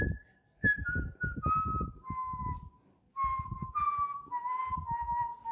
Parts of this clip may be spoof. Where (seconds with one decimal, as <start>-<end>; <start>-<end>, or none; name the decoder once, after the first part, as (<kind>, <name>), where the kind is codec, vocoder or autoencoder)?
none